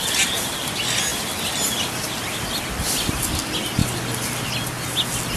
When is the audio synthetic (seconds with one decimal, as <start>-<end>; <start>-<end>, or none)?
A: none